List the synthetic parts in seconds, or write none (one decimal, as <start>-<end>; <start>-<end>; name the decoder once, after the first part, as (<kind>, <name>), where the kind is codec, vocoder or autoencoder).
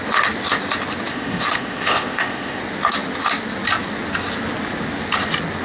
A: 1.1-2.6 (codec, ZipCodec)